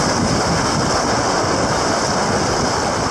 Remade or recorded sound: recorded